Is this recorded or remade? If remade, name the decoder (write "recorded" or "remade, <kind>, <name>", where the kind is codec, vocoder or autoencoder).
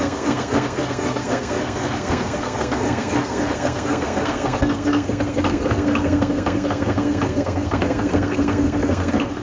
remade, codec, SNAC